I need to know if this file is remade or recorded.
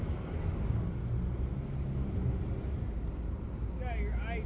recorded